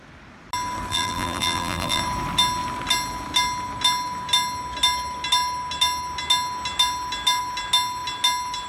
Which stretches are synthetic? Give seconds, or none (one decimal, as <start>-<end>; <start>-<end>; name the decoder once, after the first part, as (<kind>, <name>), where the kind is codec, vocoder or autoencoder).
0.9-2.0 (vocoder, BigVGAN v2)